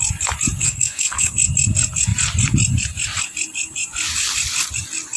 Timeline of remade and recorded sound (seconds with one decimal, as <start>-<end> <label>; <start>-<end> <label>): 0.0-0.6 recorded; 0.6-1.4 remade; 1.4-5.2 recorded